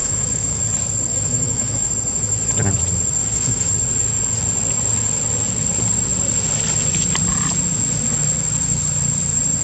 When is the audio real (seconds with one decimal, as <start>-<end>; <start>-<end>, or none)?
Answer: 0.6-1.1; 1.9-3.2; 3.7-9.6